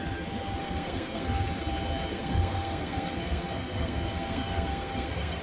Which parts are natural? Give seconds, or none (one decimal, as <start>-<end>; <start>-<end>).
0.0-0.6; 1.4-2.1